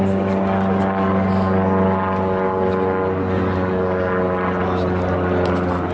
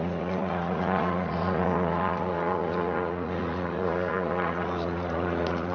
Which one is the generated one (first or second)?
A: second